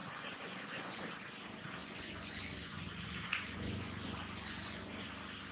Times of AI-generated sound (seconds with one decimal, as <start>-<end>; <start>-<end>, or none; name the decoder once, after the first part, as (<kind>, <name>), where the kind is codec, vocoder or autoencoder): 0.0-1.0 (vocoder, Vocos); 1.8-5.1